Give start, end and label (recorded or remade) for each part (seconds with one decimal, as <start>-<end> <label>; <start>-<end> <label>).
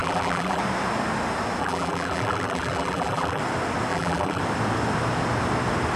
0.0-0.6 remade; 0.6-1.6 recorded; 1.6-3.4 remade; 3.4-3.9 recorded; 3.9-4.4 remade; 4.4-6.0 recorded